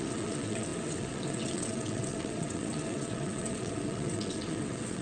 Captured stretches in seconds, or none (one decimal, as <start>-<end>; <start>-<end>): none